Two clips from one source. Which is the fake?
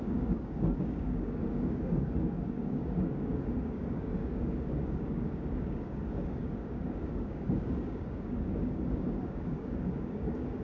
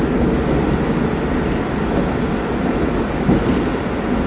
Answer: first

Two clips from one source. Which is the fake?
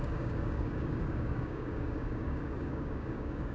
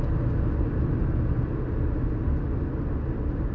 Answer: first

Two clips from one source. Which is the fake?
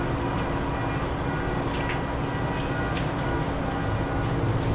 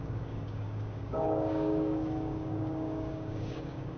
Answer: second